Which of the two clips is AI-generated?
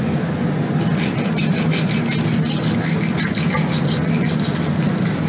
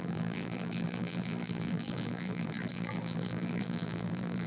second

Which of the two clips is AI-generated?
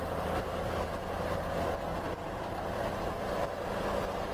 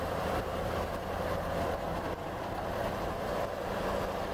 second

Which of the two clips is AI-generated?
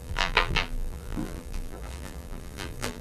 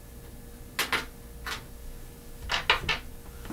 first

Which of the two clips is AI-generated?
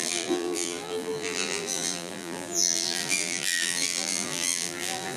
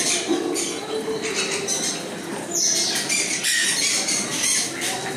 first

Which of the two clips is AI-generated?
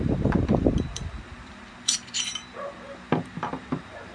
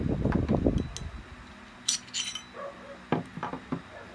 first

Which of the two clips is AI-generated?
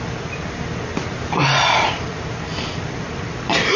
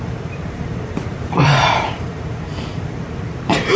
second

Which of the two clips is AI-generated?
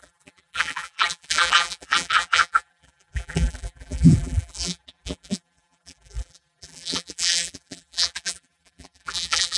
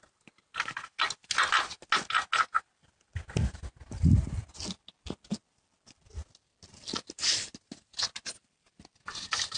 first